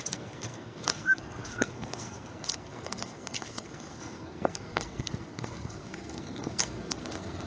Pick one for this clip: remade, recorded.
remade